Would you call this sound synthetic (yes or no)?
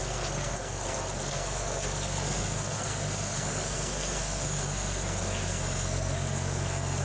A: yes